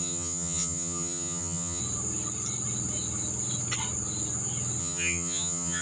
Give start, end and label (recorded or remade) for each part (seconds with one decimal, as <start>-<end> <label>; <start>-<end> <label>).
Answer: 0.0-1.8 remade; 1.8-4.8 recorded; 4.8-5.8 remade

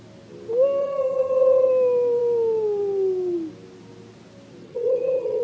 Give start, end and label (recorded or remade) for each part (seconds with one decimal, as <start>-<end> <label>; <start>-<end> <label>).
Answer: 0.0-0.8 recorded; 0.8-1.7 remade; 1.7-4.6 recorded; 4.6-5.4 remade

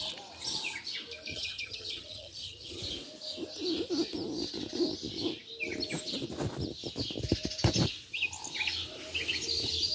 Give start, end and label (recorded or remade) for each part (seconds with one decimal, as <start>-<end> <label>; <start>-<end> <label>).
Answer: 0.0-1.3 recorded; 1.3-2.8 remade; 2.8-9.9 recorded